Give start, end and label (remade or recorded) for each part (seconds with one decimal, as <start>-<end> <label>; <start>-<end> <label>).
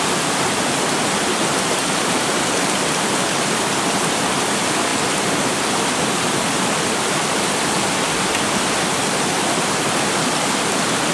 0.0-4.9 remade; 4.9-6.7 recorded; 6.7-11.1 remade